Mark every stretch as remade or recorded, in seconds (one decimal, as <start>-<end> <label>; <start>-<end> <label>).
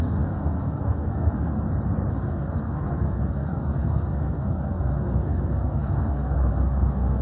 0.0-1.5 remade; 1.5-2.1 recorded; 2.1-7.2 remade